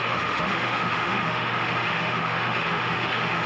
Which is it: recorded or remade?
remade